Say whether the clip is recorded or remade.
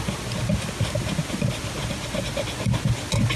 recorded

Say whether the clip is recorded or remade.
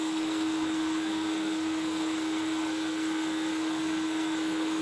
remade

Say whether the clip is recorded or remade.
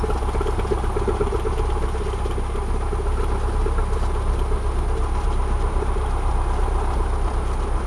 recorded